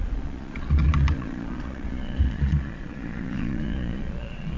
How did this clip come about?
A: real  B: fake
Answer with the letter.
B